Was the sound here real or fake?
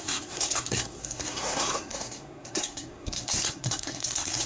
fake